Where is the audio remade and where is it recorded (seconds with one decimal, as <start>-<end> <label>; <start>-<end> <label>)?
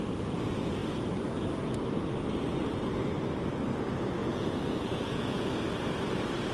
0.0-4.2 recorded; 4.2-5.5 remade; 5.5-6.5 recorded